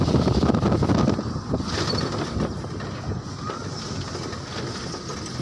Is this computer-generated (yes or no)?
no